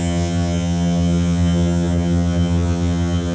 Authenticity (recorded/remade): remade